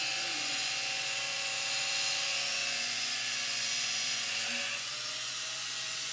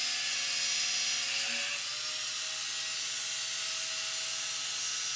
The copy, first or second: first